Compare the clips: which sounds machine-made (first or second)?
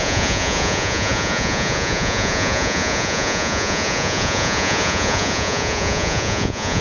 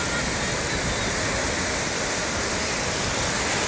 first